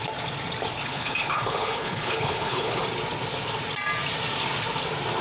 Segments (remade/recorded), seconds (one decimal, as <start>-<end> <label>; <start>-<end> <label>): 0.0-0.8 recorded; 0.8-2.8 remade; 2.8-5.2 recorded